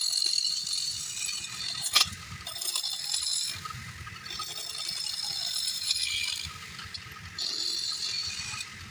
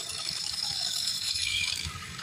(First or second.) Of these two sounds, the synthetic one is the second